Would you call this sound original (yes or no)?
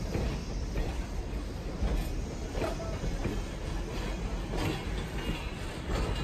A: yes